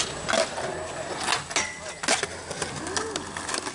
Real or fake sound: real